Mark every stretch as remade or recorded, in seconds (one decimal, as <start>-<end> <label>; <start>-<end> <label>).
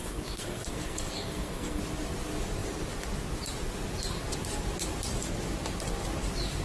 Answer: 0.0-1.8 remade; 1.8-6.6 recorded